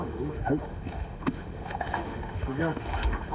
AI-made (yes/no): yes